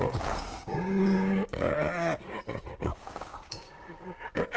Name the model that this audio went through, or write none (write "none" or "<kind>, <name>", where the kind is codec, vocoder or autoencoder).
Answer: codec, DAC